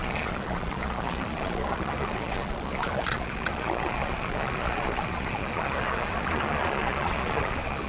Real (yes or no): no